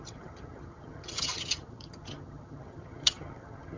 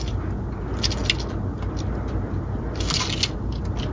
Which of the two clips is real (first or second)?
second